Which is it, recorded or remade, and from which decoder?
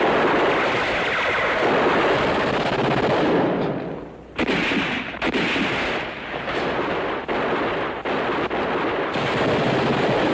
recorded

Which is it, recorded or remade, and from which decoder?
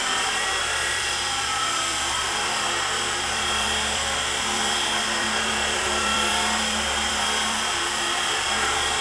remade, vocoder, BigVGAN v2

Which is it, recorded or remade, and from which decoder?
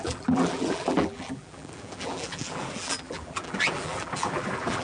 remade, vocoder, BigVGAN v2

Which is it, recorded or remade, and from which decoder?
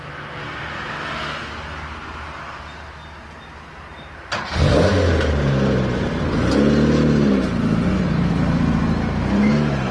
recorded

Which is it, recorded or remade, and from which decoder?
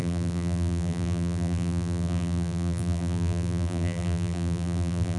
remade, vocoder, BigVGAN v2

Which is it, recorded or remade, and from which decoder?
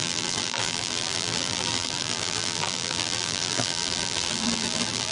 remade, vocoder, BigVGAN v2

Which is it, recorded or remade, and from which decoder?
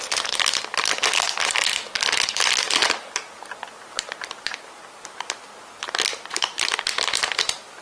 recorded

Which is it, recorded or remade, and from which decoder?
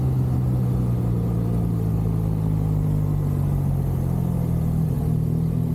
recorded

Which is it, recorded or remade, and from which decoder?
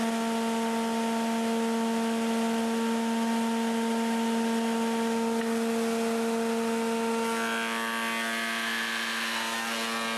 recorded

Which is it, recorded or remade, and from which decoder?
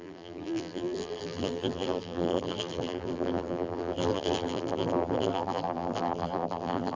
remade, vocoder, BigVGAN v2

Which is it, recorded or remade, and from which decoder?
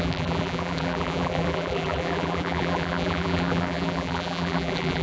remade, vocoder, BigVGAN v2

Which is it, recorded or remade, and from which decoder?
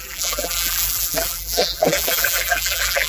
remade, vocoder, BigVGAN v2